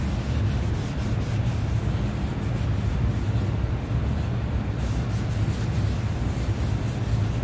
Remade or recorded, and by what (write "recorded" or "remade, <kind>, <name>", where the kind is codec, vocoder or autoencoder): recorded